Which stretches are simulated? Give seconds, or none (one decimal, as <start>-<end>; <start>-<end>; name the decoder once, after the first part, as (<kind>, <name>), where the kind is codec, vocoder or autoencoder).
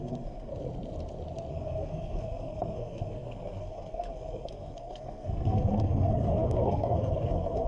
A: 0.0-0.5 (codec, SNAC); 1.5-7.7